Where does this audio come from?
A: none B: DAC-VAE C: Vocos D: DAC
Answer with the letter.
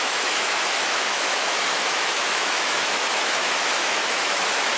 B